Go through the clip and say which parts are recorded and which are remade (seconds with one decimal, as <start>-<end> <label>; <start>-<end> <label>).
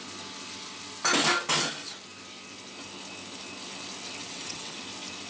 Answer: 0.0-4.2 recorded; 4.2-4.8 remade; 4.8-5.3 recorded